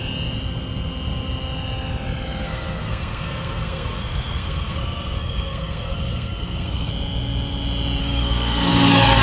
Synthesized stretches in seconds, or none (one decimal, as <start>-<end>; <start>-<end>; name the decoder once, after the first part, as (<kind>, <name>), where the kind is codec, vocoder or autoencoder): 2.4-6.9 (codec, SNAC); 8.0-8.7

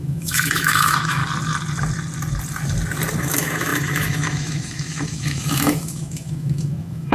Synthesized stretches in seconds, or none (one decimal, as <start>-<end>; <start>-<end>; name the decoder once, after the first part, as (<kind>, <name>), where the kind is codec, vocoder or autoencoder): 0.0-1.2 (autoencoder, DAC-VAE); 3.2-7.1

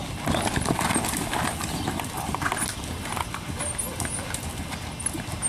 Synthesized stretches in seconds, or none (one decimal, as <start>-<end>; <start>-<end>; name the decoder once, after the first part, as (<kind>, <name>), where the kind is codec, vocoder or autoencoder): none

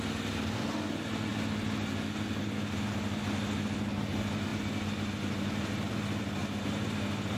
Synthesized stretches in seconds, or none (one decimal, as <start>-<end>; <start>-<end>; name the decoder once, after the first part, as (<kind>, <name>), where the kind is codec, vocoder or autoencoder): none

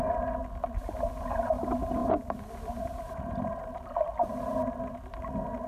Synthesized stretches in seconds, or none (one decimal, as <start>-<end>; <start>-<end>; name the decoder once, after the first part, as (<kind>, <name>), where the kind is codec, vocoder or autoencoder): none